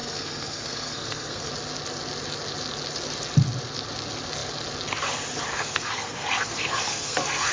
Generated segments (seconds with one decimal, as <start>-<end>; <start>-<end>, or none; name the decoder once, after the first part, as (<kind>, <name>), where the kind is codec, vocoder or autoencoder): 0.0-1.5 (codec, SNAC); 5.5-7.5